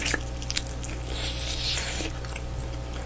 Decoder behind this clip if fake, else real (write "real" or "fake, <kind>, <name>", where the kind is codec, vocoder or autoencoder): real